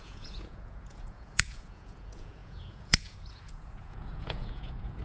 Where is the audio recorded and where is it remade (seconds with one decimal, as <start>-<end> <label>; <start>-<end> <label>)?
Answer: 0.0-5.0 remade